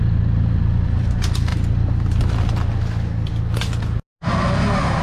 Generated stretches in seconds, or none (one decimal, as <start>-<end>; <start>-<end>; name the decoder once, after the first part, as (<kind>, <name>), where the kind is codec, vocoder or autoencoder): none